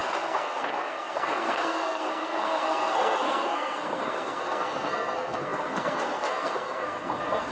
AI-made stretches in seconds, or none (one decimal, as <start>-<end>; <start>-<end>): 0.0-7.5